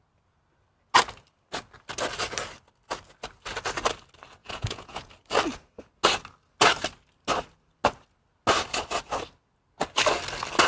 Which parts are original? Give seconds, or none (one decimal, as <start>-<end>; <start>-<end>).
0.0-4.4; 5.1-10.7